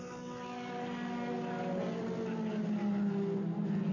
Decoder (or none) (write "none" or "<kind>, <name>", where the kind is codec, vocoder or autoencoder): none